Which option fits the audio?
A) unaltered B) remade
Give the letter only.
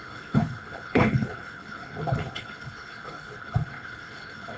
B